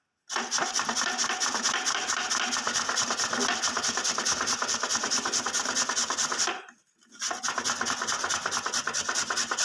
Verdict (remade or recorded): recorded